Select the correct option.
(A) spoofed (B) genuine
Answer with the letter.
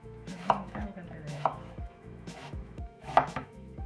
A